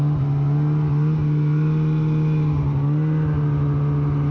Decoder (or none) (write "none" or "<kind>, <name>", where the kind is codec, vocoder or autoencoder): none